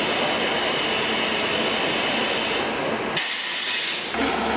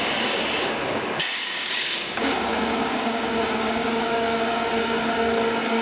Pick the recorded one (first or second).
first